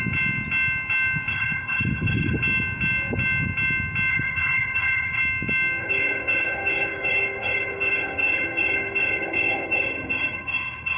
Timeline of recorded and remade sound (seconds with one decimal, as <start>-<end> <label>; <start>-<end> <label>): 0.0-1.3 recorded; 1.3-2.4 remade; 2.4-4.1 recorded; 4.1-5.2 remade; 5.2-5.8 recorded; 5.8-11.0 remade